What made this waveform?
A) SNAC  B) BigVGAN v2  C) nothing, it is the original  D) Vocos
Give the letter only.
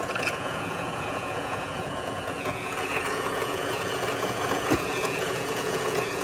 D